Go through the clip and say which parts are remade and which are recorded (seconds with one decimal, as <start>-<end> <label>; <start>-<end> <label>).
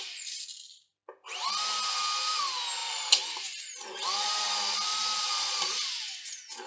0.0-2.8 recorded; 2.8-6.3 remade; 6.3-6.7 recorded